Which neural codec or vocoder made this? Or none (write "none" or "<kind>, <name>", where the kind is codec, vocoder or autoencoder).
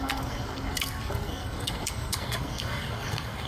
codec, SNAC